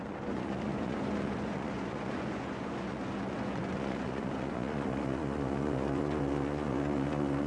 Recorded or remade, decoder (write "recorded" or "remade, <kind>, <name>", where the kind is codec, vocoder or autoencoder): remade, vocoder, Vocos